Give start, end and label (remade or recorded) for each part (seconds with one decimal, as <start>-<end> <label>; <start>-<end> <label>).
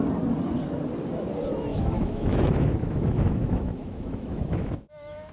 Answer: 0.0-1.7 recorded; 1.7-5.3 remade